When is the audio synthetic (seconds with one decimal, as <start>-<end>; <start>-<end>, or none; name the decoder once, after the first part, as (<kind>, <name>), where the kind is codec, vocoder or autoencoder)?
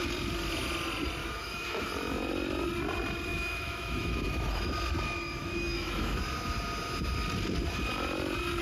1.2-1.9 (autoencoder, DAC-VAE); 3.3-4.7; 5.4-6.2